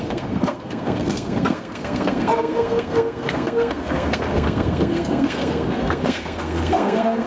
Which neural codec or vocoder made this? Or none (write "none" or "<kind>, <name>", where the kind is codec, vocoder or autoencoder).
codec, SNAC